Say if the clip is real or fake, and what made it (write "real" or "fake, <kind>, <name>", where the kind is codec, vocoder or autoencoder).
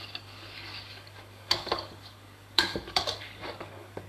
fake, codec, DAC